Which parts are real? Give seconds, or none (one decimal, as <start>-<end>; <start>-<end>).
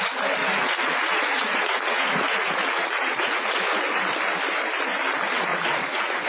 0.0-0.4; 3.8-5.5